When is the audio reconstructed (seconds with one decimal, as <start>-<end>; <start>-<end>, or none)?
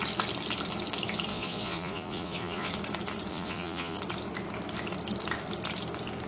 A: 1.3-2.7; 3.3-4.0